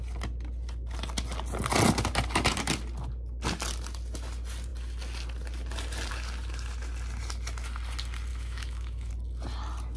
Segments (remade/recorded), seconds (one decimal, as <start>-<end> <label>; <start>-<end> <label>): 0.0-8.3 recorded; 8.3-9.1 remade; 9.1-10.0 recorded